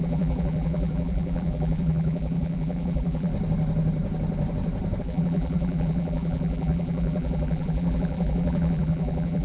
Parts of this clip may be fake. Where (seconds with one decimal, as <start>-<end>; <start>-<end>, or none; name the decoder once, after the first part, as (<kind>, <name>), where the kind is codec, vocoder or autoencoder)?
0.0-3.3 (vocoder, BigVGAN v2); 5.0-9.4